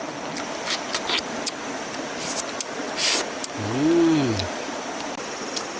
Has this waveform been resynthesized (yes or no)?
no